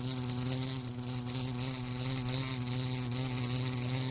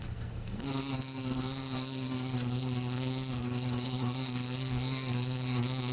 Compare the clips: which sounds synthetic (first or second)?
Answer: second